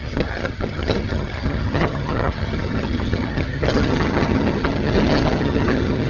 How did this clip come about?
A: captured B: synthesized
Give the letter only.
B